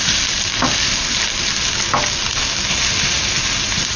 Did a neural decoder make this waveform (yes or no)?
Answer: no